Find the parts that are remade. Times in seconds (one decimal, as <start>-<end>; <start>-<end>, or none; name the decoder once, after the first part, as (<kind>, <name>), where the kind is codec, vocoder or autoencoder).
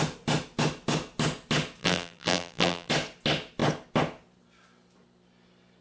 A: 1.8-2.9 (vocoder, BigVGAN v2)